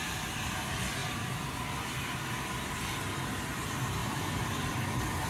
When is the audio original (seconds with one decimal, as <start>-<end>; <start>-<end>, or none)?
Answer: 0.0-4.0